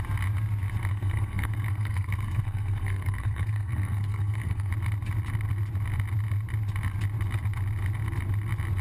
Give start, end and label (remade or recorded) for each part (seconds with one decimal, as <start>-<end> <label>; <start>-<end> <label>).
0.0-0.9 recorded; 0.9-4.7 remade; 4.7-8.8 recorded